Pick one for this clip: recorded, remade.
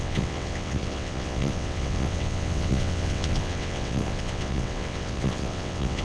remade